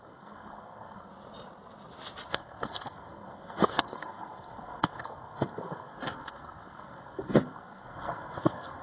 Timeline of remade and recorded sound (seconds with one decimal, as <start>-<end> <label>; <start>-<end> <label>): 0.0-1.1 remade; 1.1-2.3 recorded; 2.3-8.8 remade

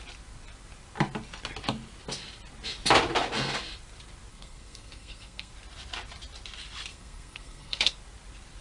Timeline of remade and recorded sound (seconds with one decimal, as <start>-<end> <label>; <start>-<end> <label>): 0.0-4.3 recorded; 4.3-5.5 remade; 5.5-6.9 recorded; 6.9-7.9 remade; 7.9-8.6 recorded

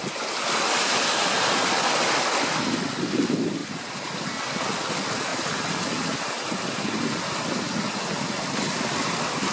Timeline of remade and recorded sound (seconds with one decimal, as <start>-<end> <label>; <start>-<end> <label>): 0.0-3.6 recorded; 3.6-4.4 remade; 4.4-5.3 recorded; 5.3-7.4 remade; 7.4-9.5 recorded

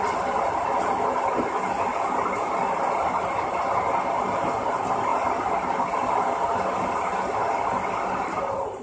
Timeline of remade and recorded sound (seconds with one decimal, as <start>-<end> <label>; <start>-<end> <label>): 0.0-8.8 recorded

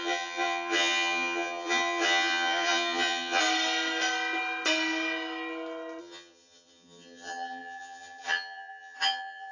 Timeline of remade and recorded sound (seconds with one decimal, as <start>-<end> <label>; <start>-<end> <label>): 0.0-3.4 remade; 3.4-6.0 recorded; 6.0-9.5 remade

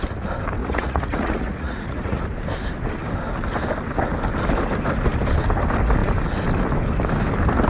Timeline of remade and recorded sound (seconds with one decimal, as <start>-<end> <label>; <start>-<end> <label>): 0.0-0.6 recorded; 0.6-2.2 remade; 2.2-7.7 recorded